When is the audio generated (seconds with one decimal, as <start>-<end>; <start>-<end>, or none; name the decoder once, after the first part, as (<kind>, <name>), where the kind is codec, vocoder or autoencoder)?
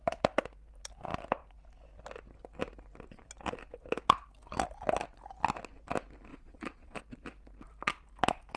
6.3-7.0 (vocoder, Vocos)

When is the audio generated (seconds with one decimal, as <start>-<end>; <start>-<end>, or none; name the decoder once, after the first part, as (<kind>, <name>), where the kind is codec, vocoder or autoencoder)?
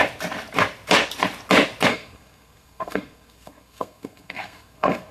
1.9-5.1 (codec, SNAC)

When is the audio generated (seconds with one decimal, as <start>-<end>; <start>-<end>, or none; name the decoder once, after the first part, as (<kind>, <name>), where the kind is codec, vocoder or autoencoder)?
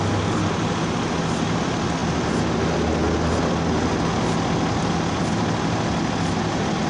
none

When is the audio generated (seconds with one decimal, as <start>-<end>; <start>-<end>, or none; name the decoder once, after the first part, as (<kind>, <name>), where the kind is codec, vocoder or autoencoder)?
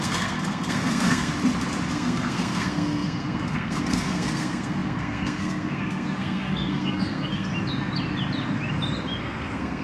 0.0-1.3 (codec, SNAC); 1.9-7.5; 9.2-9.8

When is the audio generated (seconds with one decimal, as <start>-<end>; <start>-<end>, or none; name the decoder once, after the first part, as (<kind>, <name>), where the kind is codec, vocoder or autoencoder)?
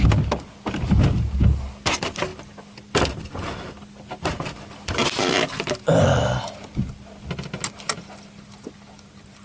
2.3-6.4 (vocoder, BigVGAN v2)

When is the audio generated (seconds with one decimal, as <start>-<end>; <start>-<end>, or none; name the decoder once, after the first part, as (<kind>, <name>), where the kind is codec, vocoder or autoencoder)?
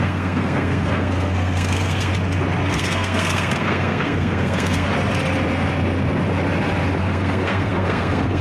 0.0-2.1 (codec, SNAC); 2.7-4.9; 7.0-8.4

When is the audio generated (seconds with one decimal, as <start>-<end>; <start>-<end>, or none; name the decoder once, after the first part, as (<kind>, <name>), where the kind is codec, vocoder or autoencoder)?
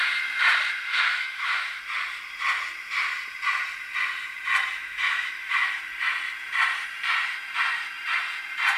0.9-1.8 (autoencoder, DAC-VAE); 4.8-5.7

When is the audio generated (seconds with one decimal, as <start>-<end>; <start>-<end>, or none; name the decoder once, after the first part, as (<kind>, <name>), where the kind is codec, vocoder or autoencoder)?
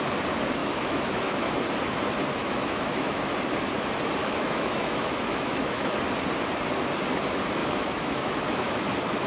0.6-1.5 (autoencoder, DAC-VAE); 2.4-3.3; 4.2-6.0; 7.6-8.8